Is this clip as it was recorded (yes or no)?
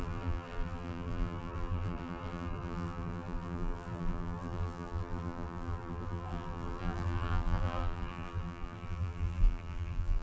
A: no